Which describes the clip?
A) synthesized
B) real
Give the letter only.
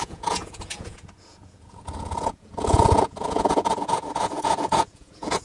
A